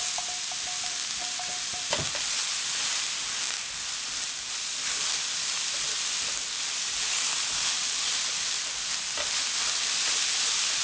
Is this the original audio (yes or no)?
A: yes